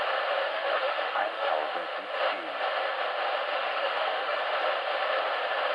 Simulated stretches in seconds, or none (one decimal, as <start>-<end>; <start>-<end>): 0.5-1.5; 3.5-4.4